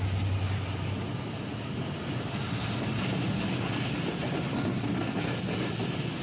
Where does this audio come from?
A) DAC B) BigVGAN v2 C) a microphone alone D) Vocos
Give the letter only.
C